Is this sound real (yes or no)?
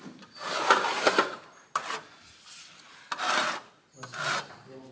yes